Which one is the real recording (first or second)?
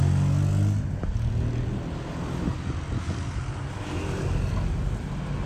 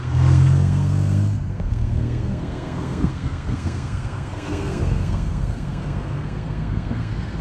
first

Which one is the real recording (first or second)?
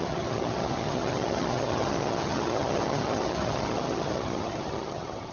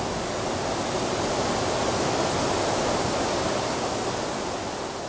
second